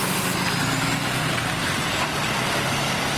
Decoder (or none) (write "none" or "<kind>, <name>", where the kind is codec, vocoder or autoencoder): none